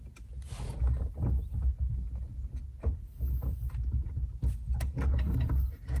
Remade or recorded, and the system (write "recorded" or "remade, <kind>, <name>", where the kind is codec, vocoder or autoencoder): recorded